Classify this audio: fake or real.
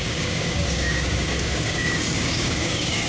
fake